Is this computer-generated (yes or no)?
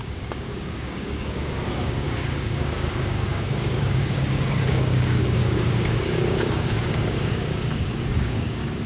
yes